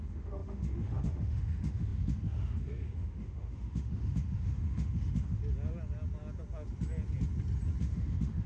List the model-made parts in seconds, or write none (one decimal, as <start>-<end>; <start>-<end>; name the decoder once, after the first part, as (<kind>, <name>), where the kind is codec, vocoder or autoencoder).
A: 0.0-5.4 (autoencoder, DAC-VAE); 7.8-8.5